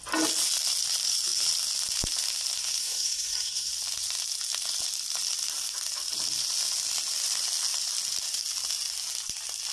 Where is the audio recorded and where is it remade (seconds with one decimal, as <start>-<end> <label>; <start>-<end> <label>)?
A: 0.0-2.8 recorded; 2.8-3.7 remade; 3.7-9.7 recorded